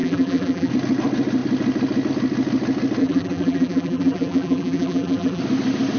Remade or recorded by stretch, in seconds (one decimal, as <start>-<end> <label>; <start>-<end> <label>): 0.0-0.7 remade; 0.7-3.0 recorded; 3.0-5.4 remade; 5.4-6.0 recorded